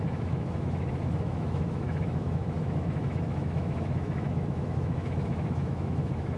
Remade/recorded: remade